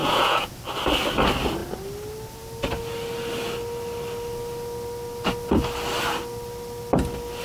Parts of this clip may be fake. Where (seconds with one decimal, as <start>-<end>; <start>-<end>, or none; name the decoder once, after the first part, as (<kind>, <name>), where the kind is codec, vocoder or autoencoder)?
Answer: 0.0-0.5 (vocoder, Vocos)